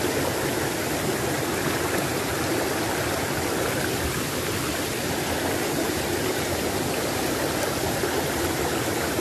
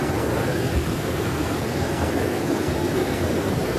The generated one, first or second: second